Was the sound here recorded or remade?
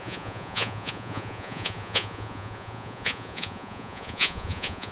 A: remade